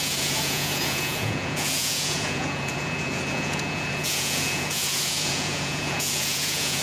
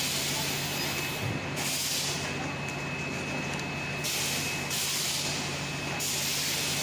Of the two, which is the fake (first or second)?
first